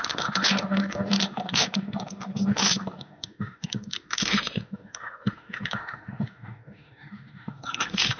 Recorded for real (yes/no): no